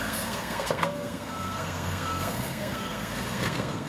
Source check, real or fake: fake